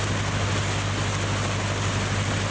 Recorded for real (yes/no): yes